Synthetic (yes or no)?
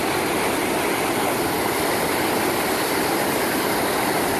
no